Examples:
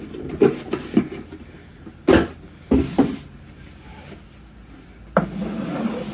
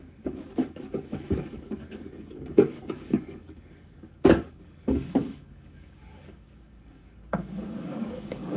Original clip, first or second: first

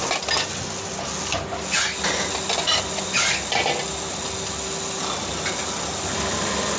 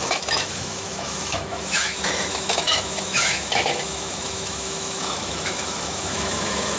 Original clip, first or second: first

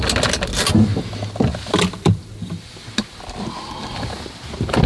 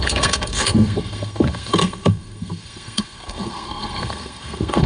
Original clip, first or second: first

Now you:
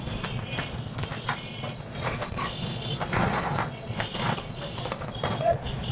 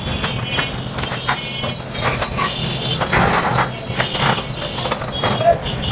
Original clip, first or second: second